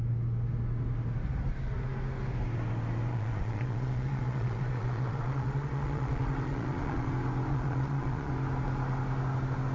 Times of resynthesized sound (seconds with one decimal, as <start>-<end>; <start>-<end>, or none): 3.1-7.1; 7.5-8.3